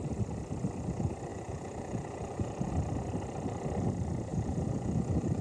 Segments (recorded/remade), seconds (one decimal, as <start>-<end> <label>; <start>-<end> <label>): 0.0-1.3 recorded; 1.3-2.7 remade; 2.7-4.3 recorded; 4.3-5.4 remade